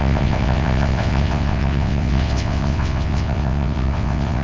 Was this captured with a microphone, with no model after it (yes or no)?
no